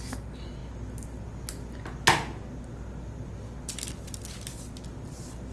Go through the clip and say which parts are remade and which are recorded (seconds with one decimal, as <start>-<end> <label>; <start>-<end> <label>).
0.0-5.5 recorded